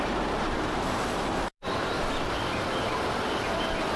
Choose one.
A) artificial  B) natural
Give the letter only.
A